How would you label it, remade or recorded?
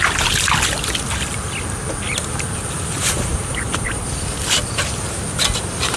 recorded